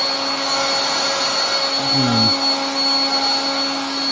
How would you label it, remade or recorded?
recorded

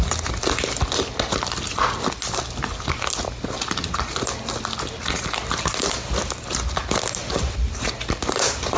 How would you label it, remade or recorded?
recorded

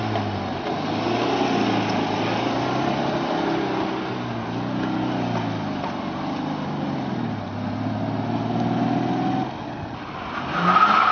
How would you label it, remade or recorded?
recorded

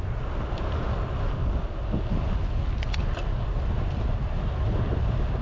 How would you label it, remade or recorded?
recorded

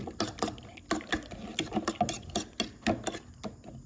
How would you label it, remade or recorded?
recorded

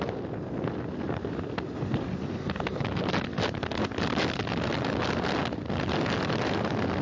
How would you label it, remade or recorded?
recorded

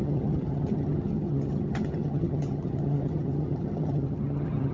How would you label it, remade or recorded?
remade